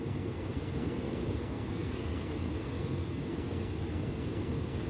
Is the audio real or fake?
fake